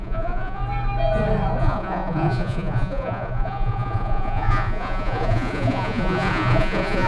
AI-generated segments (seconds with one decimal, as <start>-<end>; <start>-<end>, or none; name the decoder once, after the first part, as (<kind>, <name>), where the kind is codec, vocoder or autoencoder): 0.0-0.6 (vocoder, Vocos); 1.6-7.1